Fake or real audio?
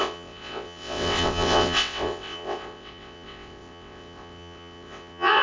fake